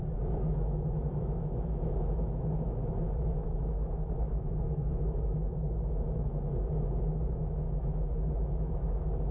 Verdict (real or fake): fake